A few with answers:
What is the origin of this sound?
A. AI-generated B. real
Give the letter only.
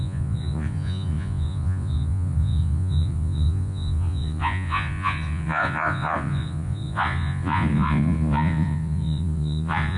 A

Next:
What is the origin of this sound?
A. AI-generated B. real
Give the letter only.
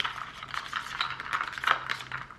B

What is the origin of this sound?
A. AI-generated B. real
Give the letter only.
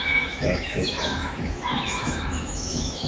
A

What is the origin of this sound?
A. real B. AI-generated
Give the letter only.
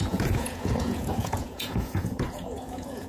B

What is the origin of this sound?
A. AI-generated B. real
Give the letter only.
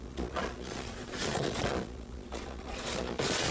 A